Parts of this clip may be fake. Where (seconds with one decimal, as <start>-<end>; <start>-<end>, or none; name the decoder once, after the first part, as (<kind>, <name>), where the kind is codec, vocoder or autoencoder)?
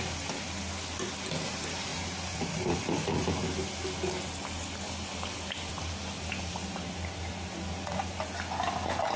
1.9-3.3 (vocoder, Vocos)